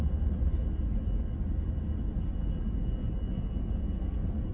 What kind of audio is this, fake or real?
real